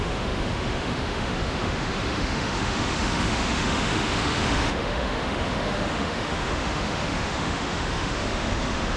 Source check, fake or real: fake